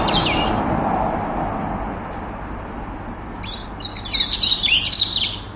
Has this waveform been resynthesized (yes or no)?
no